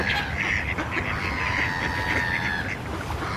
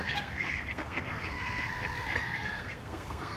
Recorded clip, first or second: first